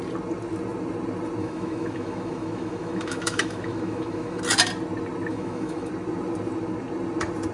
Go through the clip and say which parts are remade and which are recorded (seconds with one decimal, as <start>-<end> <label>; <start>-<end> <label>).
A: 0.0-1.4 recorded; 1.4-4.4 remade; 4.4-5.3 recorded; 5.3-5.9 remade; 5.9-7.5 recorded